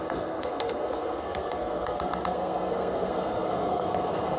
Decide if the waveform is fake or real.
fake